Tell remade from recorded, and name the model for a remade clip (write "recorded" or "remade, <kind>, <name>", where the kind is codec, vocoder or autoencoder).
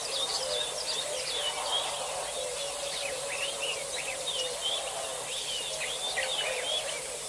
recorded